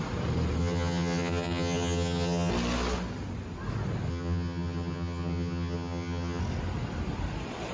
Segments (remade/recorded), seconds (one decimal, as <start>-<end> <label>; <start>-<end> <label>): 0.0-0.6 recorded; 0.6-2.5 remade; 2.5-4.1 recorded; 4.1-6.4 remade; 6.4-7.7 recorded